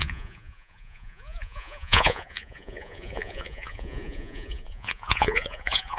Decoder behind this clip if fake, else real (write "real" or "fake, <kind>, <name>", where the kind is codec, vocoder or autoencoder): fake, vocoder, Vocos